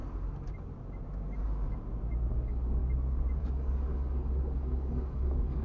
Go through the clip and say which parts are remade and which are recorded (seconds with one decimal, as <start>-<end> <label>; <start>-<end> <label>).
0.0-2.3 recorded; 2.3-2.8 remade; 2.8-3.4 recorded; 3.4-5.6 remade